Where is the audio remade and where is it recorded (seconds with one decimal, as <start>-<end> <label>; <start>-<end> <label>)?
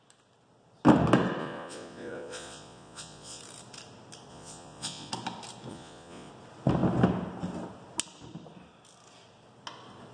0.0-1.4 recorded; 1.4-3.4 remade; 3.4-4.3 recorded; 4.3-5.1 remade; 5.1-5.7 recorded; 5.7-6.3 remade; 6.3-10.1 recorded